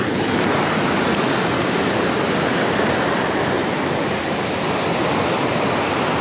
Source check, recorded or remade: recorded